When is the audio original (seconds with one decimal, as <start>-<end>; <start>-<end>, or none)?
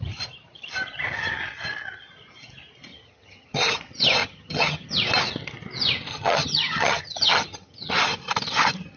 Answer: 0.0-2.9; 3.8-4.2; 4.9-6.1; 7.9-9.0